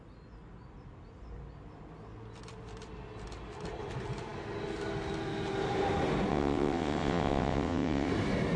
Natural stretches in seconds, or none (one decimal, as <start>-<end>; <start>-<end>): 0.0-6.3; 8.1-8.6